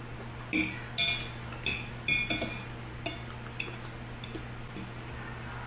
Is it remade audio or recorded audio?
recorded